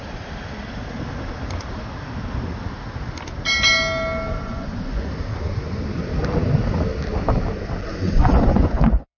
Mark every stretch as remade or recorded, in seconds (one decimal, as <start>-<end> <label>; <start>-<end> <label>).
0.0-4.3 recorded; 4.3-5.1 remade; 5.1-7.9 recorded; 7.9-9.2 remade